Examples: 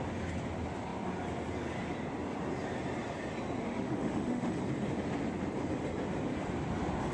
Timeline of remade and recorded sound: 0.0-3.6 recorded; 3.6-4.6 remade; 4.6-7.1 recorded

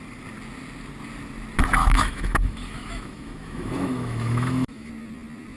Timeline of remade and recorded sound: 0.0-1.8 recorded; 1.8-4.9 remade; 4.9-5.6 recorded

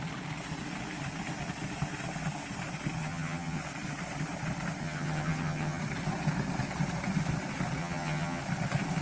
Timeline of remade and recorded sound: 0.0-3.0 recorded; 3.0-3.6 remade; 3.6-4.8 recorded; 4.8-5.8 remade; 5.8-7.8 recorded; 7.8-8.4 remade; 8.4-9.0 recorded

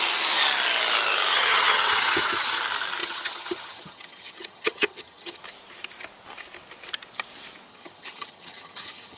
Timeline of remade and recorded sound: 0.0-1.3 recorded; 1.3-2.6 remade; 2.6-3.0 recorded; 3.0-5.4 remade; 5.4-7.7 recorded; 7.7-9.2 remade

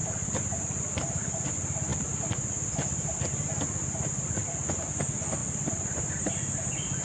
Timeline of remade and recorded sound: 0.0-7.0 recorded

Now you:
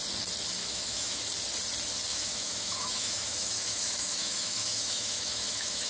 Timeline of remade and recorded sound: 0.0-0.6 recorded; 0.6-1.2 remade; 1.2-2.1 recorded; 2.1-5.9 remade

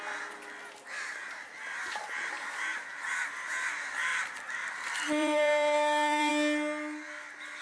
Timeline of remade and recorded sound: 0.0-4.1 recorded; 4.1-6.3 remade; 6.3-7.6 recorded

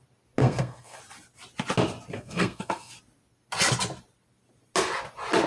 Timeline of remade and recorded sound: 0.0-0.4 recorded; 0.4-1.0 remade; 1.0-2.1 recorded; 2.1-2.9 remade; 2.9-5.5 recorded